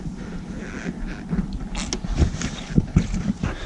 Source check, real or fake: real